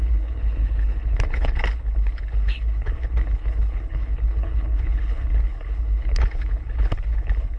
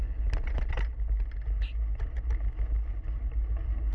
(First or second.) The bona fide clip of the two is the second